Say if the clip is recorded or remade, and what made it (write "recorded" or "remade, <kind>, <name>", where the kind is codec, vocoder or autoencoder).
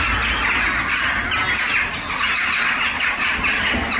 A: recorded